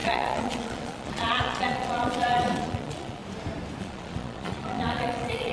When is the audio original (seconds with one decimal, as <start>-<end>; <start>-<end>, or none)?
3.2-3.8